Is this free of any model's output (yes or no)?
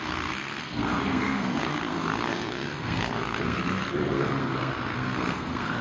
no